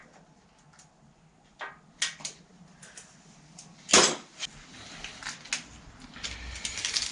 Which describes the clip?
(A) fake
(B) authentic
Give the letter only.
B